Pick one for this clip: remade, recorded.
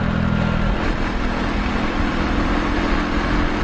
recorded